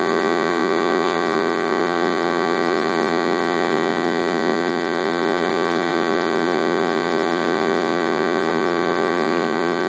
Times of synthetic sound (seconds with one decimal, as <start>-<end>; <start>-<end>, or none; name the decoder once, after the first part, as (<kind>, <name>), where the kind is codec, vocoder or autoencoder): 0.0-9.9 (vocoder, Vocos)

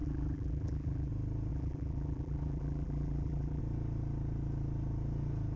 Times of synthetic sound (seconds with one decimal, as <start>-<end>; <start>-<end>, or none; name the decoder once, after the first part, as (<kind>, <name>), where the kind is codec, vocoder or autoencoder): 0.0-1.1 (vocoder, BigVGAN v2); 1.5-3.6

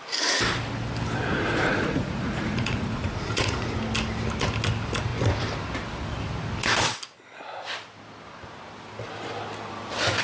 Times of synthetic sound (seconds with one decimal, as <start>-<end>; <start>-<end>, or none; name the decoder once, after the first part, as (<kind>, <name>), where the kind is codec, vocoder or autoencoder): 1.3-3.8 (vocoder, Vocos)